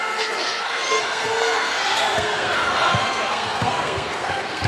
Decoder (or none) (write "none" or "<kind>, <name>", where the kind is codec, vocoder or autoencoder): codec, SNAC